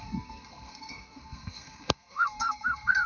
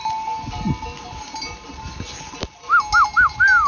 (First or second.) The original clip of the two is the second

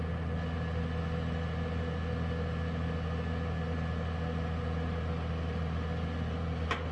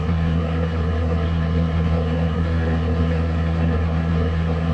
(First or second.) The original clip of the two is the first